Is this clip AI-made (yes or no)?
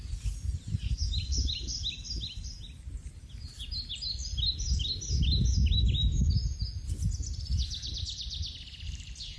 no